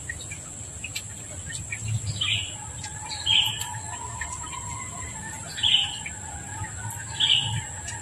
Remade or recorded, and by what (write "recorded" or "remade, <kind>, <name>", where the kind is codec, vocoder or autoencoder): remade, vocoder, BigVGAN v2